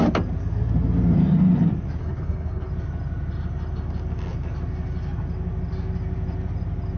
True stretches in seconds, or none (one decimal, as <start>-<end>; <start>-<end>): 0.0-2.0; 2.7-7.0